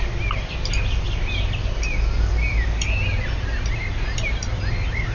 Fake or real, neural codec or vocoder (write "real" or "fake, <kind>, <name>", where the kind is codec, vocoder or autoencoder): real